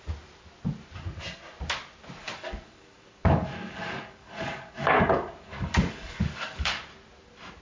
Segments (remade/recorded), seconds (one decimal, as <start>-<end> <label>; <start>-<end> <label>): 0.0-2.2 recorded; 2.2-6.8 remade; 6.8-7.6 recorded